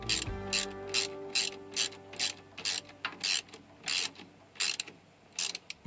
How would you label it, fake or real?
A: real